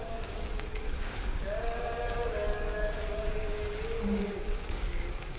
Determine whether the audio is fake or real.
fake